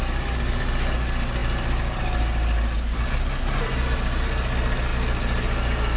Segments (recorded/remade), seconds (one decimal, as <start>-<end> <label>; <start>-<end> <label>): 0.0-6.0 recorded